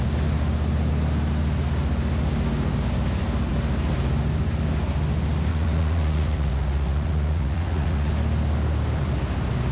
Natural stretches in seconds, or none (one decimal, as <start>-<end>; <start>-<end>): 0.0-5.5; 8.1-9.7